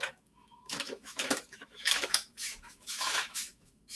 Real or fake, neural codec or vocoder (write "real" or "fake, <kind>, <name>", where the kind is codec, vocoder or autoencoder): fake, autoencoder, DAC-VAE